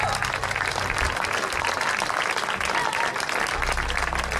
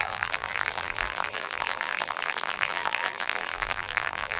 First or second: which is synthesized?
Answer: second